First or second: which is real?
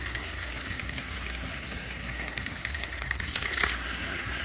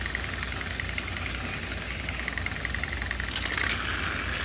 second